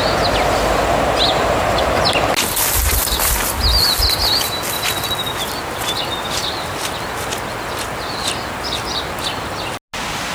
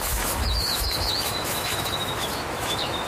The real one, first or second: first